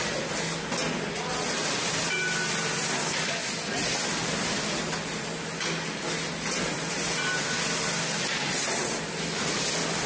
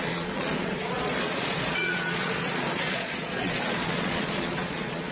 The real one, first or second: first